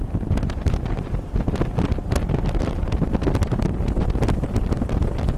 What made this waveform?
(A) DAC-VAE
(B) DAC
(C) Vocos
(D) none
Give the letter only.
D